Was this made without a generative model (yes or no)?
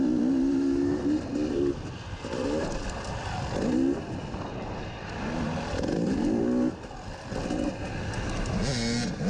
yes